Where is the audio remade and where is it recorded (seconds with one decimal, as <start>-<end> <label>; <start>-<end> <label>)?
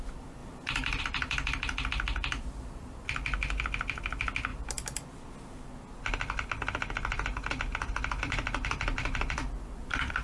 0.0-4.5 remade; 4.5-8.2 recorded; 8.2-10.2 remade